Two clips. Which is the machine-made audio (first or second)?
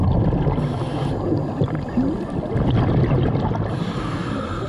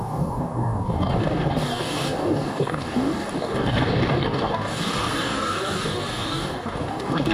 second